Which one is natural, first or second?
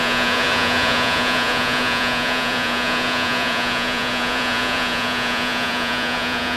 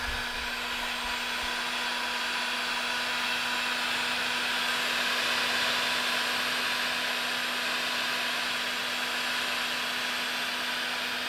second